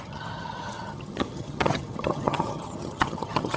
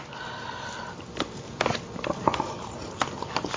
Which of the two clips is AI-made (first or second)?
first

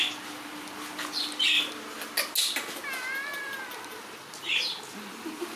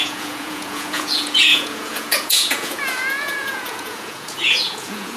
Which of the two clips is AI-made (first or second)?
second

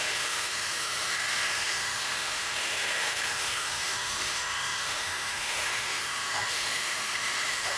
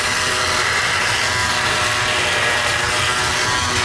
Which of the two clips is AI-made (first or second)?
first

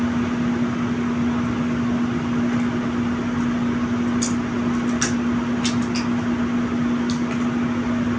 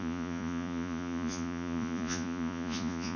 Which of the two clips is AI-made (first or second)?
second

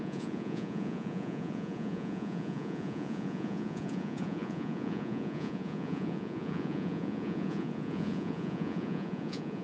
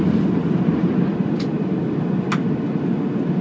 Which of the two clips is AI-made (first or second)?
first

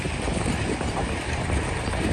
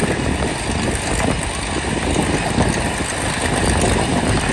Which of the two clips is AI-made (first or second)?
first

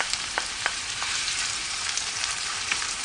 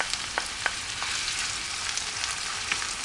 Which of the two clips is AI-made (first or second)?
first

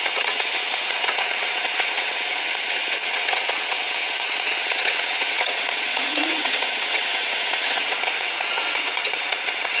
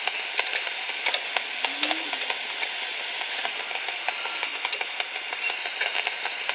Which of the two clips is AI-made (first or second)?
first